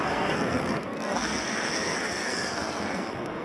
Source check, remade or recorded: remade